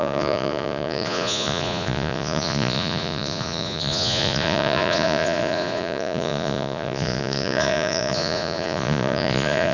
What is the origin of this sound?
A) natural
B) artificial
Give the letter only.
B